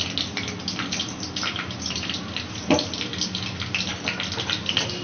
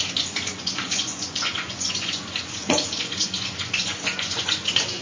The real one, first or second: first